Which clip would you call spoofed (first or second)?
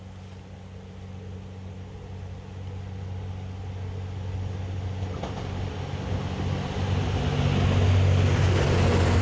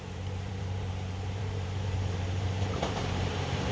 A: second